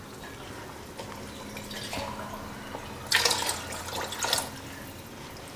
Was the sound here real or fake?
real